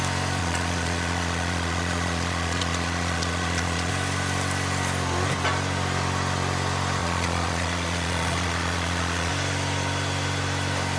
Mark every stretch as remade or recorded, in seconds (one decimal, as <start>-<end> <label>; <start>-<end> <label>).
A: 0.0-0.4 recorded; 0.4-3.9 remade; 3.9-7.0 recorded; 7.0-9.3 remade; 9.3-11.0 recorded